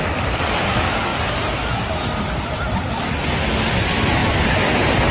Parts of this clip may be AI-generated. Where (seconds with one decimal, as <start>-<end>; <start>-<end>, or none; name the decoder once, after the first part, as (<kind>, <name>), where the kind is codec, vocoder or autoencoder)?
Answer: none